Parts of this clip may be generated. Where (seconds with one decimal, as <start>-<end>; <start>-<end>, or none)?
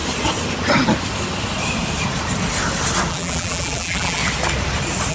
3.1-4.2